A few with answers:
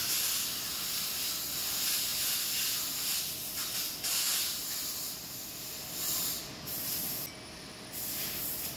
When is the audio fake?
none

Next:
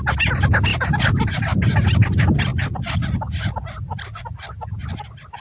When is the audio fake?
0.7-1.3 (vocoder, BigVGAN v2)